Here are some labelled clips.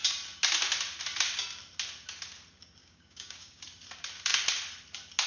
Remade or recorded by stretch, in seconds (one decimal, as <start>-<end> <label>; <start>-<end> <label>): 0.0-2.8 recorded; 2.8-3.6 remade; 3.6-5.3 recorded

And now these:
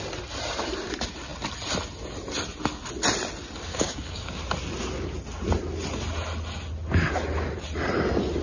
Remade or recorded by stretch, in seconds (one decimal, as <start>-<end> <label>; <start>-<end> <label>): 0.0-3.7 recorded; 3.7-4.4 remade; 4.4-8.4 recorded

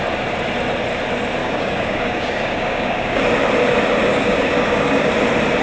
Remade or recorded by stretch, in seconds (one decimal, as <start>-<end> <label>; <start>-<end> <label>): 0.0-1.4 recorded; 1.4-3.2 remade; 3.2-4.1 recorded; 4.1-5.1 remade; 5.1-5.6 recorded

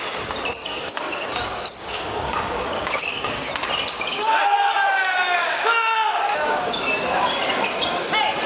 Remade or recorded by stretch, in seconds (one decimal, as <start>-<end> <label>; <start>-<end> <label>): 0.0-0.6 recorded; 0.6-3.5 remade; 3.5-4.1 recorded; 4.1-8.1 remade; 8.1-8.5 recorded

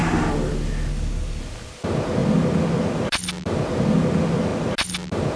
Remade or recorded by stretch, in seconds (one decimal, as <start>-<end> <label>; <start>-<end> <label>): 0.0-0.9 recorded; 0.9-1.4 remade; 1.4-5.4 recorded